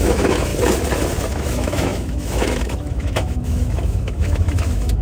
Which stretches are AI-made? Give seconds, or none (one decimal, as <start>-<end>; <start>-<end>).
0.0-0.5; 1.3-5.0

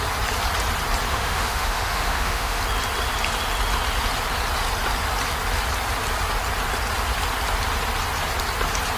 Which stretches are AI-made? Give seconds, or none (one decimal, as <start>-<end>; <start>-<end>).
1.1-2.6

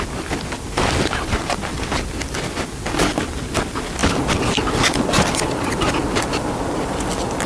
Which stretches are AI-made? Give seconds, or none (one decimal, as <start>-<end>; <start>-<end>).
none

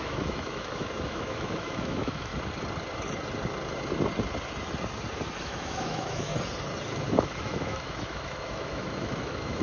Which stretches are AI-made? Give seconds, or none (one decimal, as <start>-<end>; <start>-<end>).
0.0-2.3; 5.4-6.3; 7.1-9.6

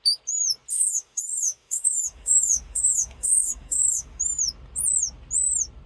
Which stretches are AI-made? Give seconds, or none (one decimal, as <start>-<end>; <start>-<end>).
0.7-4.2